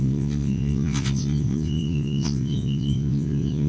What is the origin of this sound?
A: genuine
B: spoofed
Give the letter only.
B